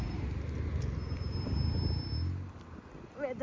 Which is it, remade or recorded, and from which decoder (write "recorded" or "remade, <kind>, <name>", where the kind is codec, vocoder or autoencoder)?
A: recorded